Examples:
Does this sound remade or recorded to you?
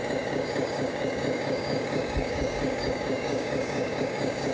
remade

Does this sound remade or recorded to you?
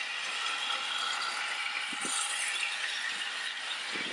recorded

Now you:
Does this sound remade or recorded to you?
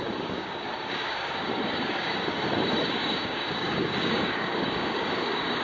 remade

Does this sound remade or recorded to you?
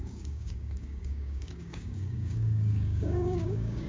remade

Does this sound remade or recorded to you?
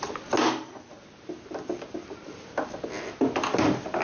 recorded